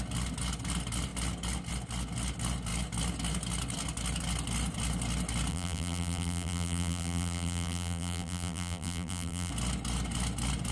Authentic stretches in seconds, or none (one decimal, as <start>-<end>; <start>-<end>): 0.0-5.5; 9.5-10.7